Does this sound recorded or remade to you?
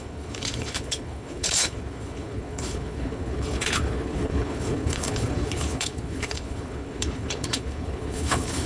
remade